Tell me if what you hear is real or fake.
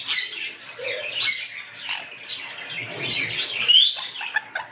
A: real